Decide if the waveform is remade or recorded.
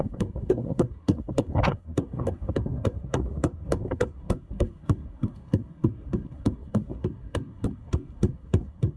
remade